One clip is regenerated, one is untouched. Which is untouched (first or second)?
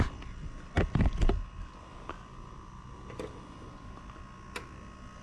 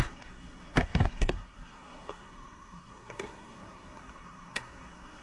first